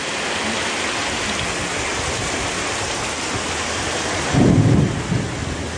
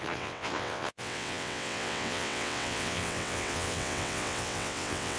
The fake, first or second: second